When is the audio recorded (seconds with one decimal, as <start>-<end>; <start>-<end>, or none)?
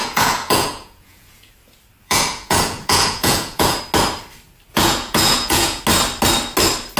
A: 1.5-2.0; 3.8-4.7; 5.8-7.0